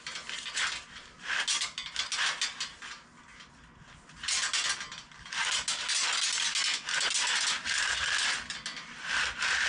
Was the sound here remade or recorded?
recorded